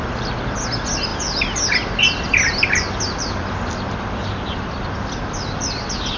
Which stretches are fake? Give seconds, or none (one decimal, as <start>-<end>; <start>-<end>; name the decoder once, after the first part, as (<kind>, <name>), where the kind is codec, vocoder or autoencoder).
none